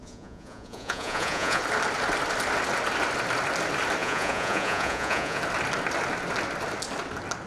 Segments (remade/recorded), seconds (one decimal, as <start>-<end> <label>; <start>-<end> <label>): 0.0-1.6 remade; 1.6-4.0 recorded; 4.0-5.4 remade; 5.4-7.5 recorded